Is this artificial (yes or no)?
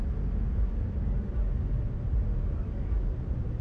no